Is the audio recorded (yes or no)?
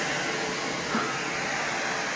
yes